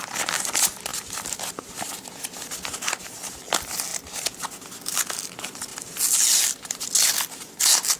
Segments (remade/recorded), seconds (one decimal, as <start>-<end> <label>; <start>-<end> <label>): 0.0-8.0 recorded